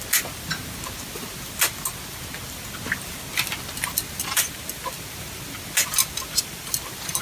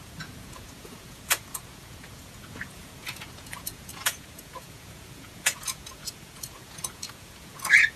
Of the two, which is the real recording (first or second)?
first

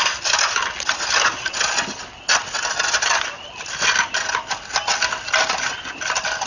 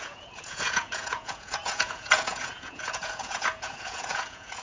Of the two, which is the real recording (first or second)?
first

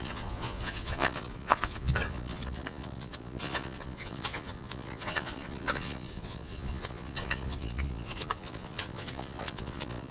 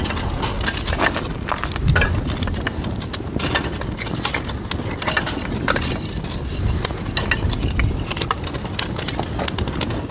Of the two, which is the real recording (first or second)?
second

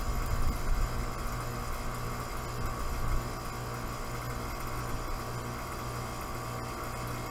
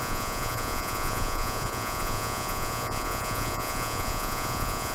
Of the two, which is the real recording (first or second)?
first